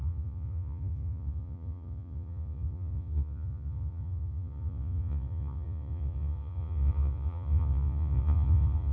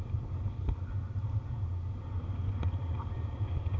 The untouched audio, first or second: second